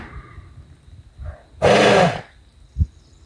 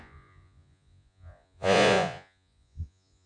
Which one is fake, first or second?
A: second